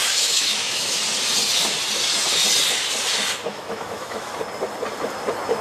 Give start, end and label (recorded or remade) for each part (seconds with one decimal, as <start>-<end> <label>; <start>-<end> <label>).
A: 0.0-1.0 remade; 1.0-3.5 recorded; 3.5-4.4 remade; 4.4-5.6 recorded